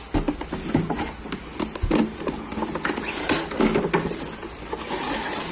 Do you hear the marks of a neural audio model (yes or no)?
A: no